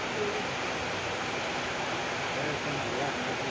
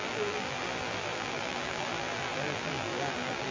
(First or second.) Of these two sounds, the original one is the first